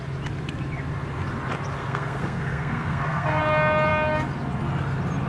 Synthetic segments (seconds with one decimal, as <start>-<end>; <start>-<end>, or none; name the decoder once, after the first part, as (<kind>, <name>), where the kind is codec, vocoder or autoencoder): 1.8-3.4 (codec, SNAC)